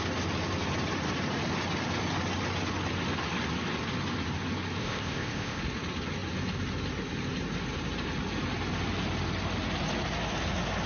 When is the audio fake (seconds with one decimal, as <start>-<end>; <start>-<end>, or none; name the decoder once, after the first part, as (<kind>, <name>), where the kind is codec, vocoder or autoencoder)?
4.8-5.6 (codec, ZipCodec)